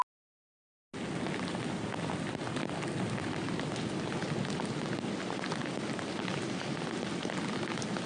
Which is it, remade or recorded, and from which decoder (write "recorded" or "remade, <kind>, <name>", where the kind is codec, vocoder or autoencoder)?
recorded